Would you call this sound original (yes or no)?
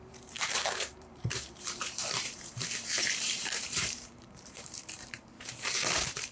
no